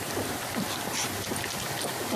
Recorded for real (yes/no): yes